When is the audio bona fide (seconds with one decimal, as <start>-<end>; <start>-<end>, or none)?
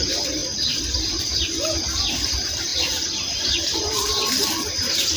none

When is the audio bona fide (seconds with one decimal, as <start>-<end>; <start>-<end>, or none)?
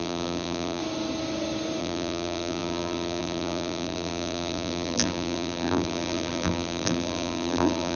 0.8-1.8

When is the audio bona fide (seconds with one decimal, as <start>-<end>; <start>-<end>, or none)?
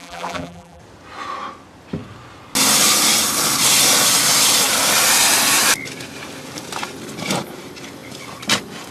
0.8-8.9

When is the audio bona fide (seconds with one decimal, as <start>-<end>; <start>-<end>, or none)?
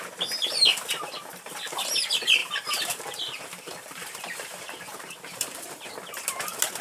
0.0-2.4; 5.9-6.8